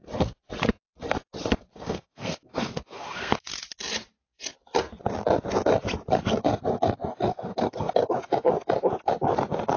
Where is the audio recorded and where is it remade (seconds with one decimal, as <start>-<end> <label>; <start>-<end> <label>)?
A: 0.0-1.7 recorded; 1.7-3.5 remade; 3.5-7.3 recorded; 7.3-8.1 remade; 8.1-9.8 recorded